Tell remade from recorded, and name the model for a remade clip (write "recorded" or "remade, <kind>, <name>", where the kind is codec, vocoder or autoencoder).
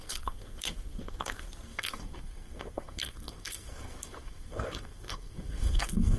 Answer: remade, codec, SNAC